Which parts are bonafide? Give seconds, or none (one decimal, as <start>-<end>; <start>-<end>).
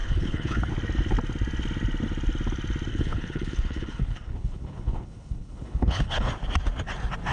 0.7-2.9; 6.3-7.3